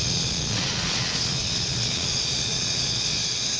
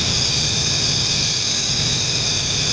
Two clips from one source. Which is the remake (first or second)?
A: first